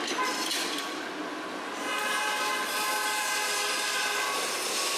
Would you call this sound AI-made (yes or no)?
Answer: no